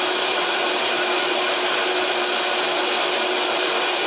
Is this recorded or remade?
recorded